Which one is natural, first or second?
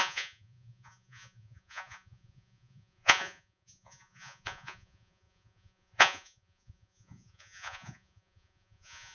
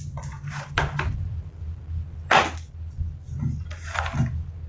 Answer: second